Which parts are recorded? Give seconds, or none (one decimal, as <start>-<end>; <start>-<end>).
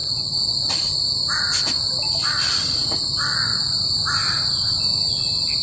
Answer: 1.4-3.5; 5.0-5.6